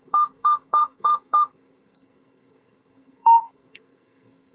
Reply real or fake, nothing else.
fake